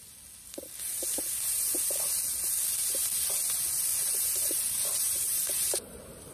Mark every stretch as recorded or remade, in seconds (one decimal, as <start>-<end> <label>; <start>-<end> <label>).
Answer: 0.0-3.9 recorded; 3.9-6.3 remade